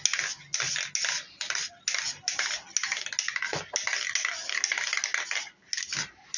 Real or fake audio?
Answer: real